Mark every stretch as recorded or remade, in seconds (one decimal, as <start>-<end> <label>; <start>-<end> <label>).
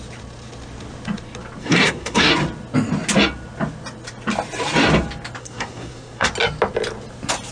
0.0-1.6 recorded; 1.6-2.3 remade; 2.3-5.4 recorded; 5.4-6.3 remade; 6.3-7.5 recorded